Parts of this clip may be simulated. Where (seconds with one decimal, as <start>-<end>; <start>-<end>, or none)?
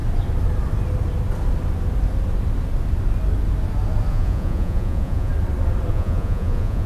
4.1-5.3; 5.9-6.9